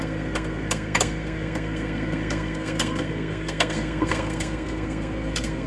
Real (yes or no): no